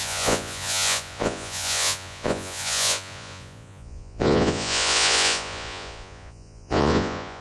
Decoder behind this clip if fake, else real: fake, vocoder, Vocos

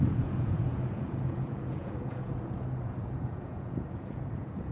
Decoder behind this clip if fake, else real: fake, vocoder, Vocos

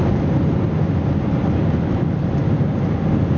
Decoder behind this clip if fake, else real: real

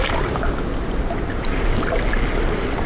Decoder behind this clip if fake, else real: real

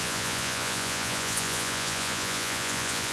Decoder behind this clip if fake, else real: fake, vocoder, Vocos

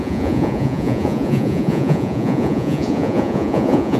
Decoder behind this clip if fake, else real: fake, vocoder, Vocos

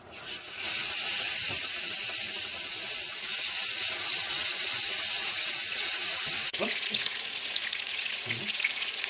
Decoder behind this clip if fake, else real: fake, vocoder, Vocos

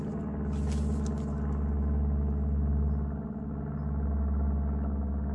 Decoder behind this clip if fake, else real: real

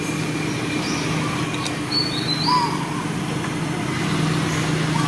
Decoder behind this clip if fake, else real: real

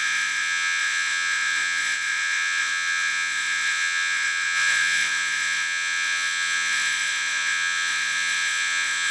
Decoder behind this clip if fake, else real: fake, vocoder, Vocos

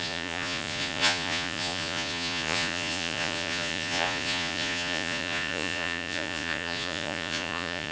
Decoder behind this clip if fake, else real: fake, vocoder, Vocos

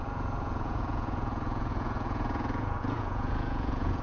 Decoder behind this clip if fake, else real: fake, vocoder, Vocos